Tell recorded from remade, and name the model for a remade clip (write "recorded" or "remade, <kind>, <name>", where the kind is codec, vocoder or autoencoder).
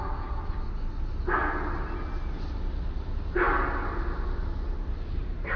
recorded